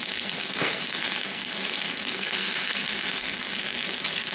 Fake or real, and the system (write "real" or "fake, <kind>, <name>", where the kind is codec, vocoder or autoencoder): fake, codec, SNAC